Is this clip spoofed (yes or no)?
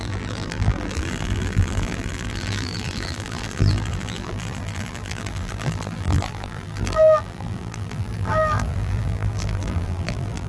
yes